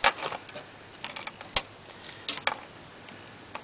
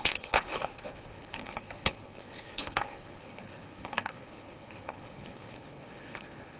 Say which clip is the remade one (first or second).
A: second